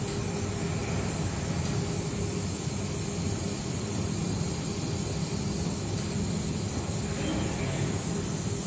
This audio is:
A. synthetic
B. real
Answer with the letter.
B